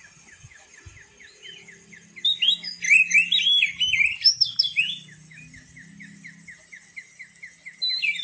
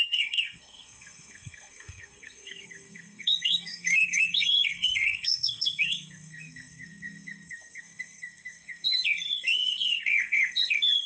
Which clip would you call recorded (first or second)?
first